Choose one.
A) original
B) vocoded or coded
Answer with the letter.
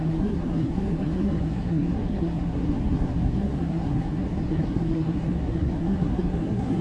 B